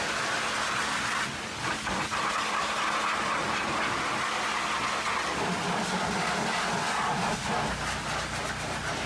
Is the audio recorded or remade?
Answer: recorded